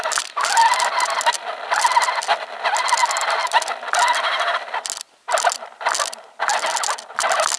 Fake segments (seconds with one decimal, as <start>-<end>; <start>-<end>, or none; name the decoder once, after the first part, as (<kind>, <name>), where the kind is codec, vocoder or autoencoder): none